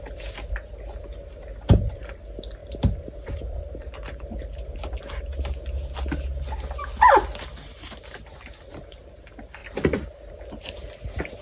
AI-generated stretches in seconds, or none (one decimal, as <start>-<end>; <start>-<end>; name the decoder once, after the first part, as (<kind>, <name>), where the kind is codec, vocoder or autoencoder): 1.5-2.2 (vocoder, BigVGAN v2); 2.6-4.9; 7.5-9.0